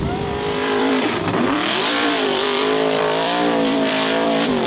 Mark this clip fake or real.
fake